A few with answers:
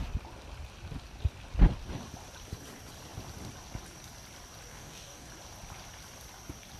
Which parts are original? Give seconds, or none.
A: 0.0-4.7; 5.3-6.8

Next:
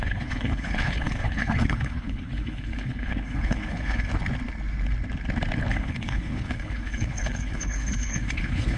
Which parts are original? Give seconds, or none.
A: 4.1-5.7

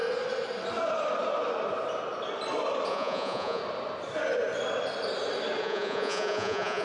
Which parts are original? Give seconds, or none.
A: 0.0-2.9; 3.6-5.6

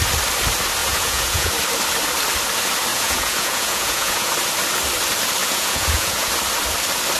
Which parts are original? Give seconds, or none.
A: 0.0-0.8; 1.5-2.9; 4.3-5.4; 6.3-7.2

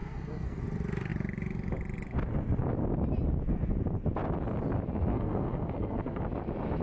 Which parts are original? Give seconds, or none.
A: 0.6-5.1; 6.2-6.8

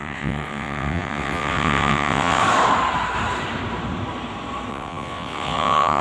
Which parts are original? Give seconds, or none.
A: 2.4-4.7

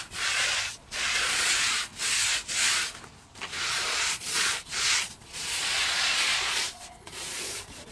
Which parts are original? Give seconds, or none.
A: 1.9-3.7